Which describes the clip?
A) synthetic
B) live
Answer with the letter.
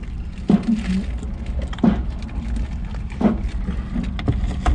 B